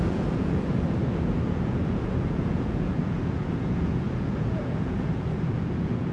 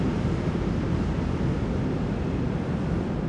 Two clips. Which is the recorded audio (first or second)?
second